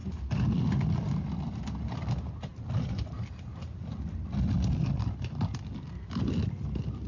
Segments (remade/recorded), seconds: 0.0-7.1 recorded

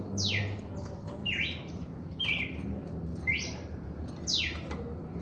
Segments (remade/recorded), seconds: 0.0-1.2 recorded; 1.2-2.1 remade; 2.1-3.1 recorded; 3.1-4.1 remade; 4.1-5.2 recorded

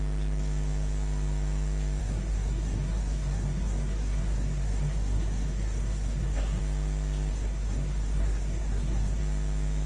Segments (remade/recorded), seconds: 0.0-2.0 recorded; 2.0-6.6 remade; 6.6-7.3 recorded; 7.3-9.2 remade; 9.2-9.9 recorded

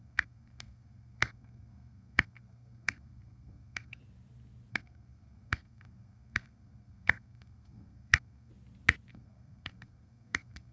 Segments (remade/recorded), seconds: 0.0-4.0 remade; 4.0-4.7 recorded; 4.7-8.5 remade; 8.5-9.1 recorded; 9.1-10.7 remade

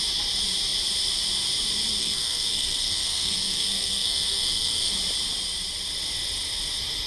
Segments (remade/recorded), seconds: 0.0-2.0 recorded; 2.0-4.9 remade; 4.9-7.1 recorded

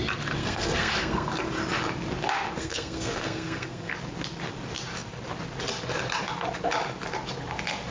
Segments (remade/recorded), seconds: 0.0-0.4 recorded; 0.4-1.3 remade; 1.3-2.6 recorded; 2.6-3.9 remade; 3.9-7.9 recorded

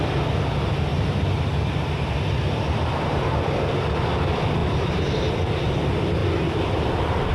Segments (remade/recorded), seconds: 0.0-7.3 recorded

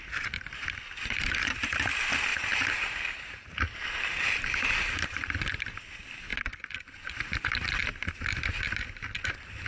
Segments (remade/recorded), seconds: 0.0-2.3 recorded; 2.3-5.4 remade; 5.4-9.7 recorded